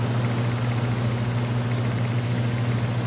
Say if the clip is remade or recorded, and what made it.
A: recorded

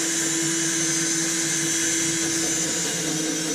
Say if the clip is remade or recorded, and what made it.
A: recorded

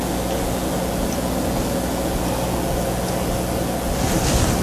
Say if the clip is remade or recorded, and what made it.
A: recorded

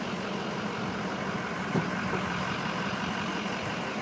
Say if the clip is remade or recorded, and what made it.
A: remade, vocoder, BigVGAN v2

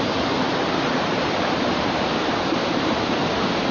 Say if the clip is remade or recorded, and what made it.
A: remade, vocoder, BigVGAN v2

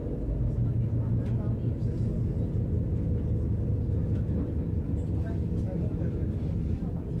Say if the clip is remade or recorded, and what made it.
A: recorded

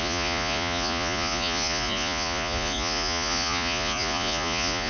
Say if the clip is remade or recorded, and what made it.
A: remade, vocoder, Vocos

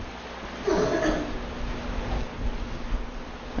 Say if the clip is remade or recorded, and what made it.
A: recorded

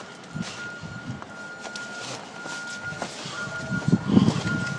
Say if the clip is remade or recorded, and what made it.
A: recorded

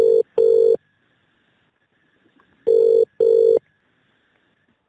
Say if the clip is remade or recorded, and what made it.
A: recorded